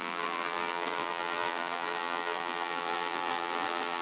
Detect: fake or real fake